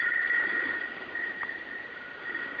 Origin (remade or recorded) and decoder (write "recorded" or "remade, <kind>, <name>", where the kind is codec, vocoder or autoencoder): recorded